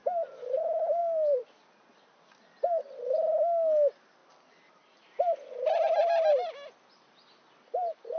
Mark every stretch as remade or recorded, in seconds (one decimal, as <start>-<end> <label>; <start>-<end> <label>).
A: 0.0-1.0 recorded; 1.0-1.7 remade; 1.7-4.2 recorded; 4.2-6.3 remade; 6.3-8.2 recorded